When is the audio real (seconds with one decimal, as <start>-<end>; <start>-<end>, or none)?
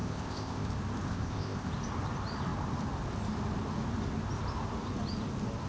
0.7-1.1; 1.7-5.7